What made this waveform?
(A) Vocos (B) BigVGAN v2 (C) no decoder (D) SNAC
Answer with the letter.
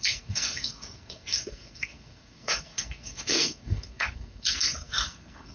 D